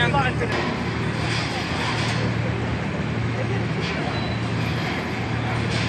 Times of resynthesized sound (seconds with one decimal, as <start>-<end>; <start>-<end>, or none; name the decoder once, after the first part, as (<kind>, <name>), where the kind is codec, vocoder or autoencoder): 3.2-3.9 (autoencoder, DAC-VAE)